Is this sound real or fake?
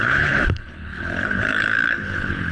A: fake